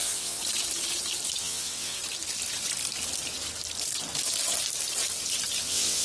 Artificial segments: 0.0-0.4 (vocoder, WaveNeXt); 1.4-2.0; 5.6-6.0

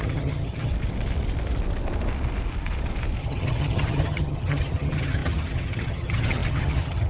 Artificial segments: 0.0-0.7 (vocoder, HiFi-GAN); 3.2-7.1